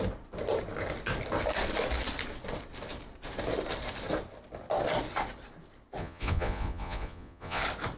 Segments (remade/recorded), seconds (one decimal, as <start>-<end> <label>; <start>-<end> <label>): 0.0-6.0 recorded; 6.0-7.6 remade; 7.6-8.0 recorded